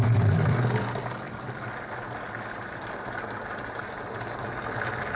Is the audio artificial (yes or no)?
no